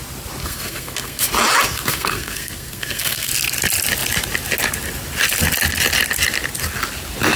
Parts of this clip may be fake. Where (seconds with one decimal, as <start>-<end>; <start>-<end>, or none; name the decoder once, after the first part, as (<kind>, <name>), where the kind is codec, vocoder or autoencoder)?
0.4-1.2 (codec, SNAC); 1.7-3.3